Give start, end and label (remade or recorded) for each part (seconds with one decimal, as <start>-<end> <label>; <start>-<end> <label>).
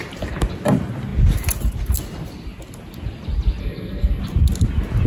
0.0-3.6 recorded; 3.6-4.2 remade; 4.2-5.1 recorded